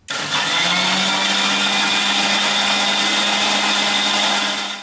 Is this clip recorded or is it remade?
recorded